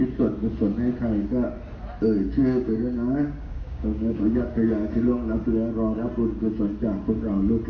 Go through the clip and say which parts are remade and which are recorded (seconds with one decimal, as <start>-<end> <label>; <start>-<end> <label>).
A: 0.0-2.4 recorded; 2.4-4.7 remade; 4.7-7.7 recorded